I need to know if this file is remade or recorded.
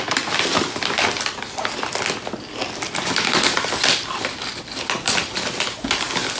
recorded